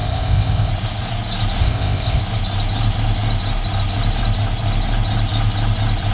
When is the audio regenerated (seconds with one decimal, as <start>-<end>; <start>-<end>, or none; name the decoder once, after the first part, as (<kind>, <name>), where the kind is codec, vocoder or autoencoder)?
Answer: 0.0-0.7 (codec, ZipCodec); 1.6-2.2